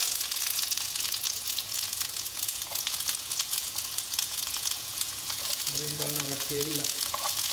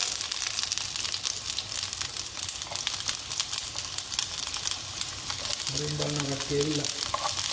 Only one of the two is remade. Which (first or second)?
first